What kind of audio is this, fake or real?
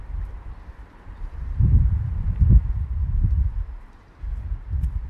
fake